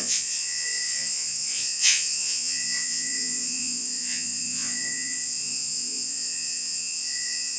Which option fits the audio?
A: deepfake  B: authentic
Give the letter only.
A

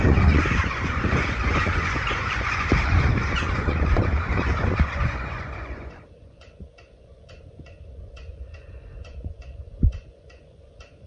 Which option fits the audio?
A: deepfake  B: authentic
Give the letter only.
A